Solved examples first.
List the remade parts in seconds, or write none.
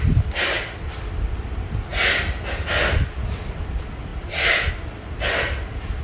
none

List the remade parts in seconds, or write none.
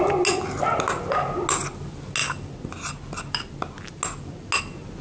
none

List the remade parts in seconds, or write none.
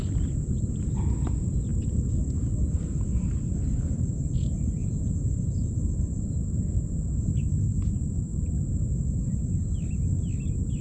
4.8-5.3 (vocoder, Vocos)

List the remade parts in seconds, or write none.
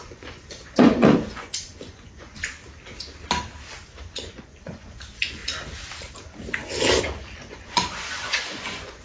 0.0-2.6 (vocoder, Vocos); 4.0-5.4; 7.0-9.0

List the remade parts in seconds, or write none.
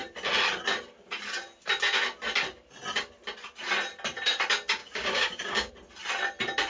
4.8-5.7 (codec, DAC)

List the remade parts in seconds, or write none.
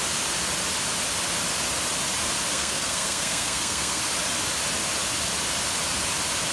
2.5-4.0 (codec, SNAC)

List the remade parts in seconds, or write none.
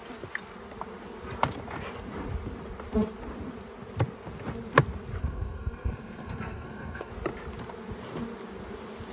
5.2-7.1 (codec, SNAC)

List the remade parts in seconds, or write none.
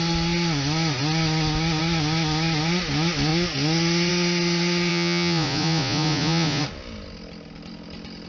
4.9-6.6 (vocoder, Vocos)